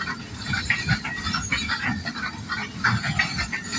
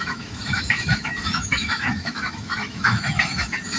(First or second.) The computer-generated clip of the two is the second